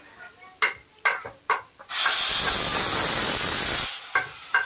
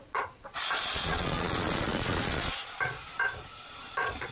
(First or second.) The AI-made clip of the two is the second